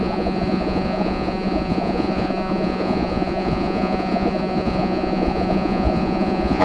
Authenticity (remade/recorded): remade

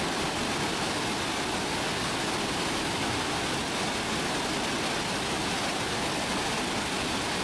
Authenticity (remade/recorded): recorded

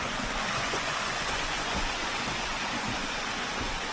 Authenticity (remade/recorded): remade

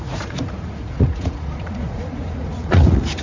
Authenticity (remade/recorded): remade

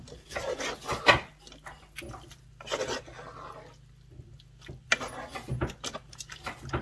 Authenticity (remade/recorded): recorded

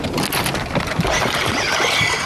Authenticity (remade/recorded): recorded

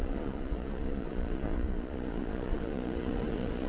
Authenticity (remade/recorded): remade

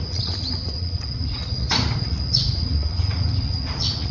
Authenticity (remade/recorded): remade